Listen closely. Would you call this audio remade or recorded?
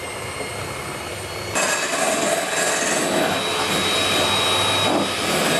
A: recorded